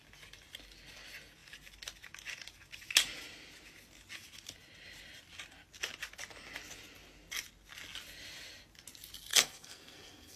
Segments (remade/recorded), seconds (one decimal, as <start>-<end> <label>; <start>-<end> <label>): 0.0-9.3 recorded; 9.3-10.4 remade

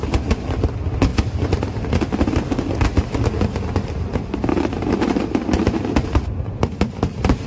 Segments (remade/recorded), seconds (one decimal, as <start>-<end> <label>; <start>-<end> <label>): 0.0-7.5 recorded

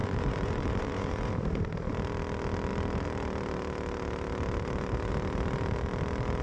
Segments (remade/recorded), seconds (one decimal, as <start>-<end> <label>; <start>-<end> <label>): 0.0-1.3 remade; 1.3-6.4 recorded

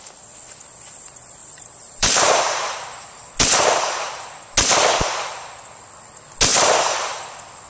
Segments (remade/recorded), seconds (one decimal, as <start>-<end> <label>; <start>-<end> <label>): 0.0-1.4 recorded; 1.4-3.3 remade; 3.3-6.5 recorded; 6.5-7.2 remade; 7.2-7.7 recorded

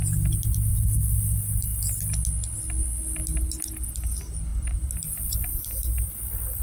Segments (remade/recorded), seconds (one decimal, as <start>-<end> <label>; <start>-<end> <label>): 0.0-4.5 recorded; 4.5-5.0 remade; 5.0-5.5 recorded; 5.5-6.1 remade; 6.1-6.6 recorded

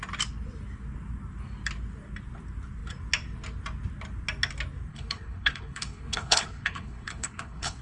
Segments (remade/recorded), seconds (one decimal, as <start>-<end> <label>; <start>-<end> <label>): 0.0-4.9 recorded; 4.9-7.8 remade

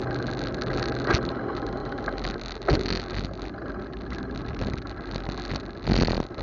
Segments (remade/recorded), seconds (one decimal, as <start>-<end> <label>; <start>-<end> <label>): 0.0-6.4 recorded